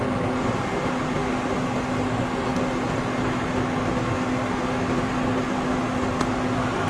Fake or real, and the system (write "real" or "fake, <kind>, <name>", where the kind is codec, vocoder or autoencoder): real